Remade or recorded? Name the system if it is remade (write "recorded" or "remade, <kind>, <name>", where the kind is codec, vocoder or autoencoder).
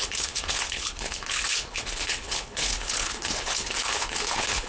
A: remade, codec, HILCodec